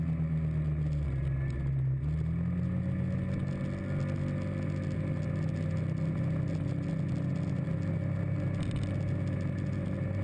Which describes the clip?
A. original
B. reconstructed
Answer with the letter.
A